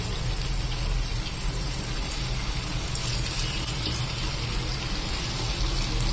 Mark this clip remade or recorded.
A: recorded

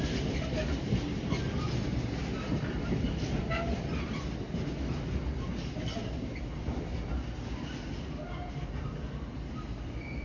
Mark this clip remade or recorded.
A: recorded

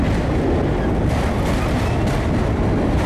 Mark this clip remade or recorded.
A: recorded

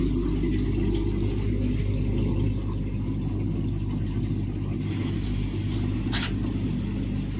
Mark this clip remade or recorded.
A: recorded